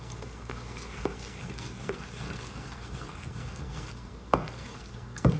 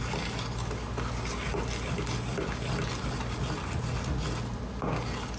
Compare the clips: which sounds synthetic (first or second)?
first